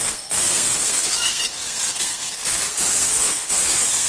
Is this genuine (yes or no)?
no